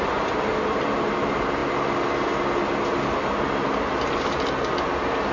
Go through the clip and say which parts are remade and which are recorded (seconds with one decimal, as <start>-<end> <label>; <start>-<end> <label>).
0.0-5.3 recorded